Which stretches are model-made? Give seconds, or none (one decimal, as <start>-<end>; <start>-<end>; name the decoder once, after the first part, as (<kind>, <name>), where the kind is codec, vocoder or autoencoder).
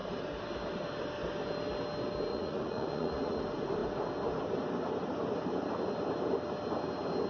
2.3-3.4 (vocoder, Vocos)